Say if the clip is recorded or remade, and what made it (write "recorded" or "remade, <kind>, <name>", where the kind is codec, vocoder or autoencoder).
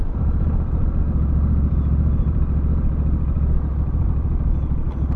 recorded